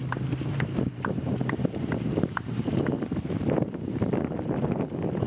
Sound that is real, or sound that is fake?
fake